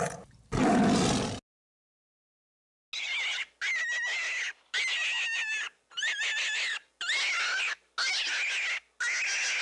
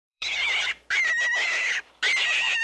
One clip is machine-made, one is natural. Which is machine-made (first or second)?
second